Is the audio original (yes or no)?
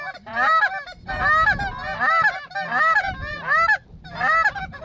yes